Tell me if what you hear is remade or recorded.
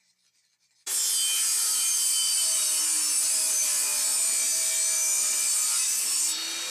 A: recorded